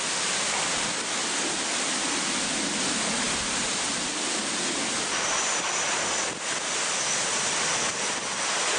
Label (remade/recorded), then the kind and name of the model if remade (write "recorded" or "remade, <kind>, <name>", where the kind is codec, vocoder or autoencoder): recorded